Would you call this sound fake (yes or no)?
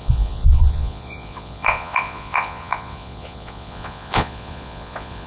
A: yes